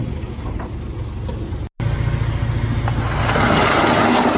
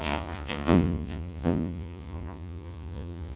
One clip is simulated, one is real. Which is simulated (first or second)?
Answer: second